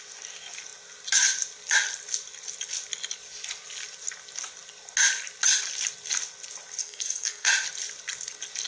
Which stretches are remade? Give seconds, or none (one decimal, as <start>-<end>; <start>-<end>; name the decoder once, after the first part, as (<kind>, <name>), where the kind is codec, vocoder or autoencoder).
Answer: 6.8-7.5 (codec, SNAC)